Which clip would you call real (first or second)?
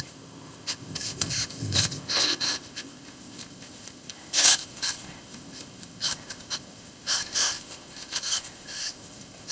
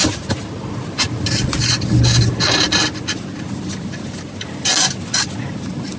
second